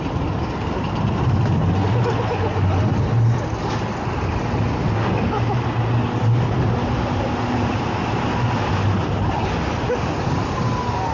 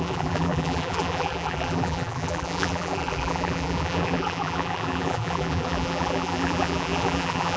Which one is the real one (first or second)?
first